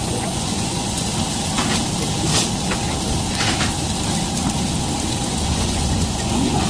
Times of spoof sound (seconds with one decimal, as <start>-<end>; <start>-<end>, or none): 0.0-1.1; 5.1-6.7